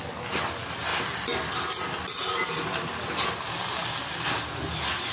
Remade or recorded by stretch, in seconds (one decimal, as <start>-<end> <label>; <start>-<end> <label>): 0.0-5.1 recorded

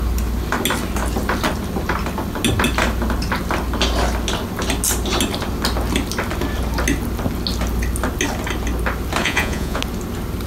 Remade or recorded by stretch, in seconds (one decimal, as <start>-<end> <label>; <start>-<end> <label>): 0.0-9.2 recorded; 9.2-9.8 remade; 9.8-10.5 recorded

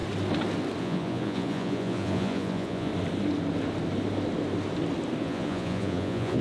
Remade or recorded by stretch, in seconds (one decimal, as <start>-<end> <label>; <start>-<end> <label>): 0.0-0.8 recorded; 0.8-2.9 remade; 2.9-5.2 recorded; 5.2-6.4 remade